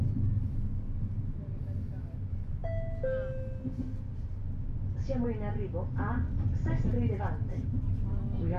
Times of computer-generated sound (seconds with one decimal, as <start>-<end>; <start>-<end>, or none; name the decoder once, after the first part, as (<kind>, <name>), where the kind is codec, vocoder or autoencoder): none